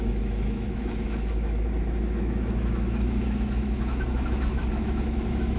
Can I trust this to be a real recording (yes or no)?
no